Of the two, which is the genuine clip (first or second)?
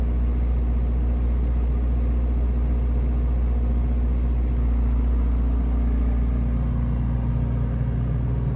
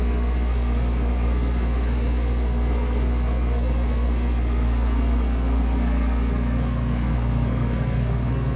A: first